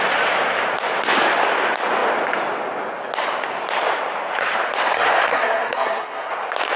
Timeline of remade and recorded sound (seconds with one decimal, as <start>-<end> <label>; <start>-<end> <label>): 0.0-5.3 recorded; 5.3-6.3 remade; 6.3-6.8 recorded